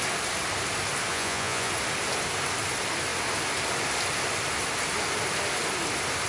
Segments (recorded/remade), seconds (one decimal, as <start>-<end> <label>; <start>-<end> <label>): 0.0-1.1 recorded; 1.1-1.7 remade; 1.7-6.3 recorded